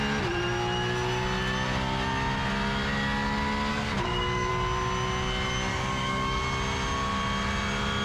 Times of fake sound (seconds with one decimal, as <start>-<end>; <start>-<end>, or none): 3.7-4.5; 5.7-6.4

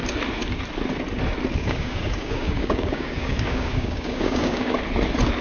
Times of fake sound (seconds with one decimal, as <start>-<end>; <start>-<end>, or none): 1.6-4.8

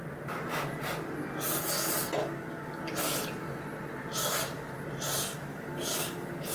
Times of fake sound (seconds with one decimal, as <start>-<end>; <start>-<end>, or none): 2.2-2.8; 5.5-6.5